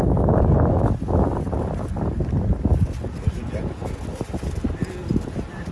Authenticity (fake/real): real